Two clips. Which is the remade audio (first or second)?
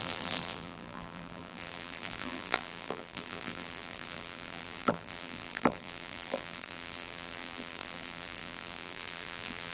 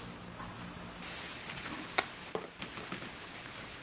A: first